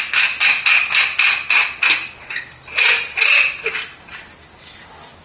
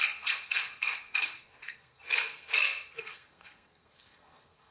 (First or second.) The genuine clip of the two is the first